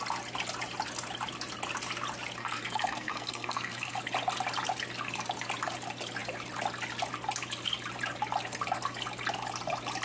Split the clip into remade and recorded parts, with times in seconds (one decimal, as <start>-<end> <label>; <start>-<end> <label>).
0.0-2.4 recorded; 2.4-4.0 remade; 4.0-10.0 recorded